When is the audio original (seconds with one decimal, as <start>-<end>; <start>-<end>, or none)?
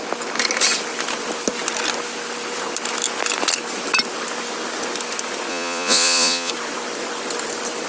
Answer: 0.0-5.5; 6.5-7.9